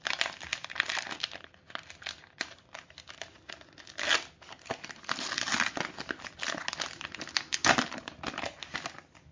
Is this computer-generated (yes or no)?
no